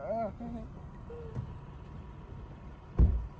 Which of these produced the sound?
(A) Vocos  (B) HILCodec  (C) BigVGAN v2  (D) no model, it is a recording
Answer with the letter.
D